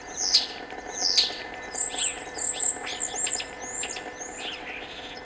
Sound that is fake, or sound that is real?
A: real